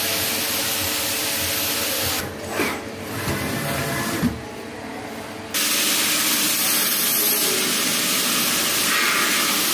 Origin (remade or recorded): recorded